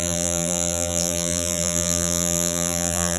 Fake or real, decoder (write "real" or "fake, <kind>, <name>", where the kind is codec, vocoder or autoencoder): fake, vocoder, BigVGAN v2